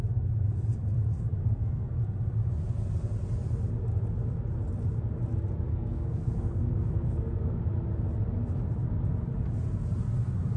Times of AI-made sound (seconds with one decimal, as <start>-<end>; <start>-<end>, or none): 1.4-2.0; 5.7-7.6